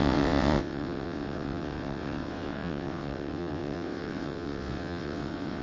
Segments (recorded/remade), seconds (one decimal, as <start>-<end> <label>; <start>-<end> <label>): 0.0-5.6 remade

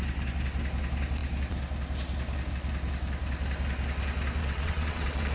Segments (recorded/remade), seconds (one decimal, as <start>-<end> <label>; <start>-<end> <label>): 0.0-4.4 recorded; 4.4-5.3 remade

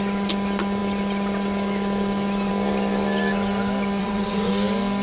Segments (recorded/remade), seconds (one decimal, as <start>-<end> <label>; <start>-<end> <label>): 0.0-4.0 recorded; 4.0-4.5 remade; 4.5-5.0 recorded